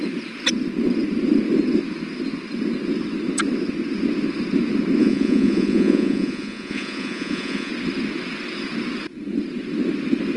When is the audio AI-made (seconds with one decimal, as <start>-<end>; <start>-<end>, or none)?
5.0-7.7

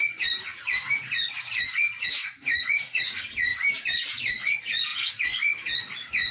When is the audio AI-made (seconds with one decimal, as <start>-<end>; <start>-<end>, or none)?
0.0-3.5; 4.2-6.3

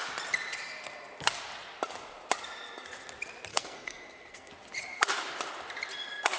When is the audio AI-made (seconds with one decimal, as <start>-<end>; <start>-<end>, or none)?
3.5-4.5

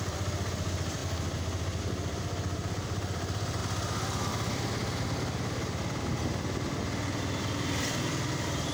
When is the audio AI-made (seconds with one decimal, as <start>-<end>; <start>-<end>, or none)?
0.0-1.0; 1.8-3.6; 4.3-8.7

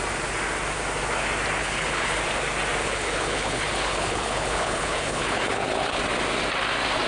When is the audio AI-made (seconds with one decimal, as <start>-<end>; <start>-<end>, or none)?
1.6-2.2; 2.8-6.0